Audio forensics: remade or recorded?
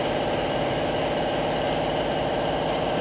recorded